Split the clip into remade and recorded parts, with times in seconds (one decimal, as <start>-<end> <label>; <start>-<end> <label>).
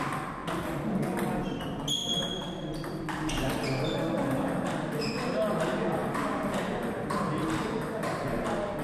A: 0.0-8.8 recorded